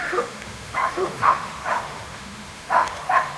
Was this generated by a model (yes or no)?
yes